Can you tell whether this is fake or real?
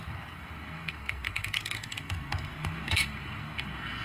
fake